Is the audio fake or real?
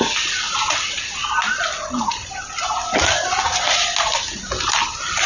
real